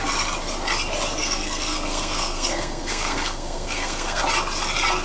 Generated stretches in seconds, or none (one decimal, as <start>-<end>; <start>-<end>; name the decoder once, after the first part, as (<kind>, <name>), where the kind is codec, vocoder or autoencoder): 1.2-4.2 (codec, SNAC)